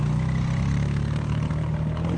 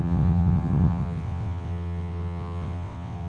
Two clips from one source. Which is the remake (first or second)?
second